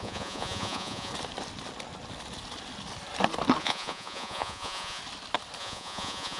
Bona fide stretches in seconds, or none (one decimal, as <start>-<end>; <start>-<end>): 1.1-3.6; 5.0-5.6